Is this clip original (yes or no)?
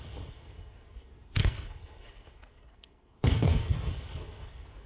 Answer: no